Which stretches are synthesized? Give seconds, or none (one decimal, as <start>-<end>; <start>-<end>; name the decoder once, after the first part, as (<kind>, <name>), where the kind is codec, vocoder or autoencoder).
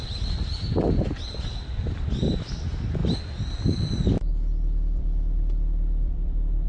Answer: 0.0-3.0 (vocoder, BigVGAN v2); 4.3-6.7